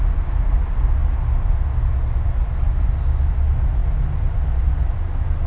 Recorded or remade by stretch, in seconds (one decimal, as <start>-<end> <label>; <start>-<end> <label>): 0.0-5.5 recorded